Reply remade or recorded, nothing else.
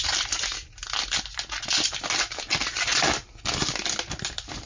recorded